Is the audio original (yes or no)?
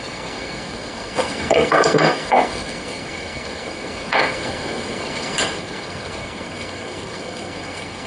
no